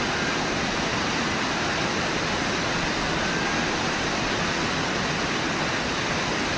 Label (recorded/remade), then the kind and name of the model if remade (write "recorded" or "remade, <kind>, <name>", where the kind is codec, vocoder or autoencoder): recorded